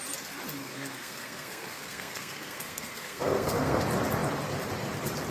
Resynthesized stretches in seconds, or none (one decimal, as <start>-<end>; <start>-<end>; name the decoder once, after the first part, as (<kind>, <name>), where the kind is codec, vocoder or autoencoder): 0.6-3.8 (codec, SNAC)